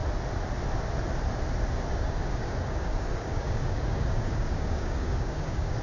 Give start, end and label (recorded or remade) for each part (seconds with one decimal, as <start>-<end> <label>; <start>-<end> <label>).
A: 0.0-1.9 recorded; 1.9-5.8 remade